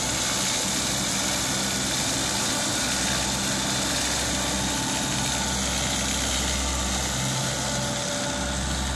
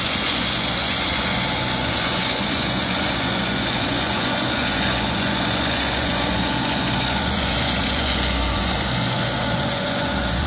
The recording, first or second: first